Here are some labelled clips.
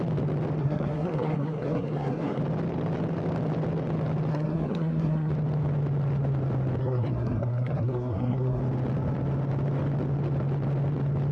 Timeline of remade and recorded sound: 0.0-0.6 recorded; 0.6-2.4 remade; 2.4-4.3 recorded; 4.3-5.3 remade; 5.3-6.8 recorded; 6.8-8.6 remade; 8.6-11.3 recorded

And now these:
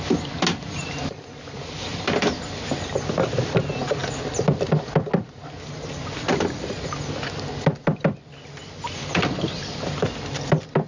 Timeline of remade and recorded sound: 0.0-10.9 recorded